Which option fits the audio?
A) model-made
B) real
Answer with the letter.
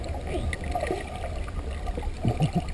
B